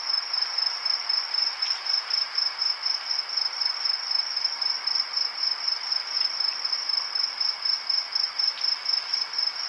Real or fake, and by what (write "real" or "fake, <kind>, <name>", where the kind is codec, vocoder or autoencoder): real